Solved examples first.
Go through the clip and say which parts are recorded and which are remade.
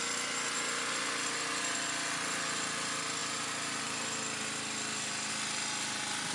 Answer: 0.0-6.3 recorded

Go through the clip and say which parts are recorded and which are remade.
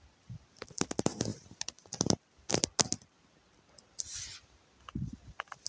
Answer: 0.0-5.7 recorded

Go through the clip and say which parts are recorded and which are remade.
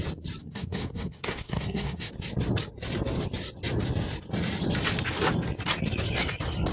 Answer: 0.0-0.4 recorded; 0.4-2.1 remade; 2.1-6.7 recorded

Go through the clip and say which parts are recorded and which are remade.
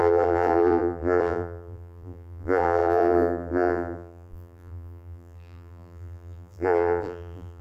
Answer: 0.0-7.6 remade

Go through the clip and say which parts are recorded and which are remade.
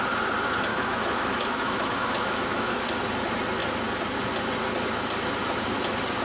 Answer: 0.0-0.7 recorded; 0.7-3.0 remade; 3.0-6.2 recorded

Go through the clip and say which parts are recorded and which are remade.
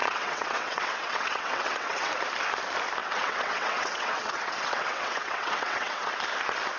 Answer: 0.0-2.1 remade; 2.1-3.0 recorded; 3.0-6.1 remade; 6.1-6.8 recorded